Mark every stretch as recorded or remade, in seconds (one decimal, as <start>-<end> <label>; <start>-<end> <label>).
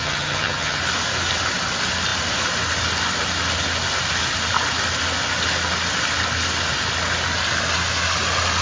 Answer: 0.0-0.8 remade; 0.8-8.6 recorded